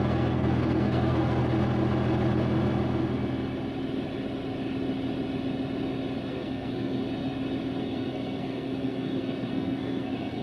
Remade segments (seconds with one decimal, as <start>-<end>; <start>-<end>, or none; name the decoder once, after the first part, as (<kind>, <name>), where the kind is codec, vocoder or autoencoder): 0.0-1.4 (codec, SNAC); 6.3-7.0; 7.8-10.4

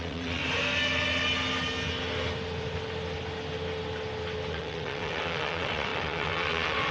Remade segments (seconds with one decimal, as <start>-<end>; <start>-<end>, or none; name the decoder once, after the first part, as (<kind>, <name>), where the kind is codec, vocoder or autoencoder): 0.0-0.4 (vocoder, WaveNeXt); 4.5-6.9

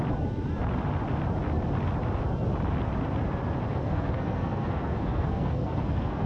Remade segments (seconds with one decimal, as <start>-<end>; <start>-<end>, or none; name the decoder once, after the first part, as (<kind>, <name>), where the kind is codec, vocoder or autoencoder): 3.7-6.3 (codec, SNAC)

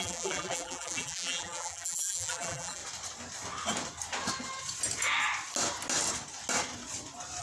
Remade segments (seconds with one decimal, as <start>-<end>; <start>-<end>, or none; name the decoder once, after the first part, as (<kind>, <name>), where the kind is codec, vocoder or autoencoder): 0.0-2.8 (vocoder, BigVGAN v2)

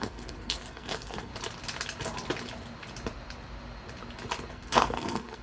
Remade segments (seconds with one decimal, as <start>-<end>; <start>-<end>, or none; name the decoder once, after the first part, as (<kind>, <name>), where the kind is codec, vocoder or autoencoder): 0.0-1.3 (codec, SNAC); 4.5-5.4